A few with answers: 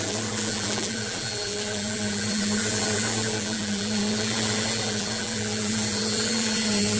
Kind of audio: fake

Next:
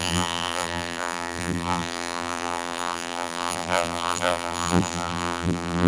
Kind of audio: fake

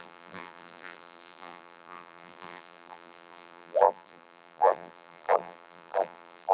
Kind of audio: fake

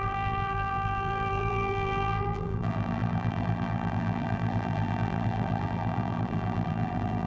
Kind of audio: fake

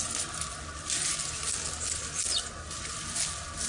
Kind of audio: real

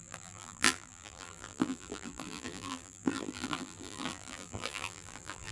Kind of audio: fake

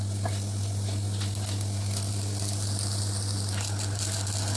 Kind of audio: real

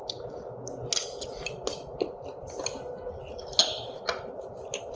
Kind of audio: real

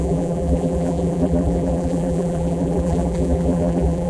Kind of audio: fake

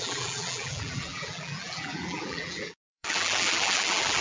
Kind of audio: fake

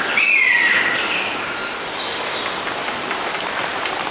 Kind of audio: fake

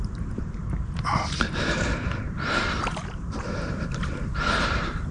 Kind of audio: fake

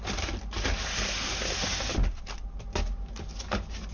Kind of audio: real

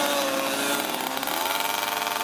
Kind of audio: real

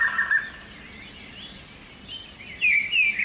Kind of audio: real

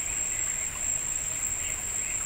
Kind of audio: real